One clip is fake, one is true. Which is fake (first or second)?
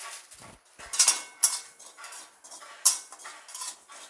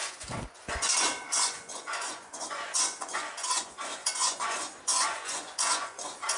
second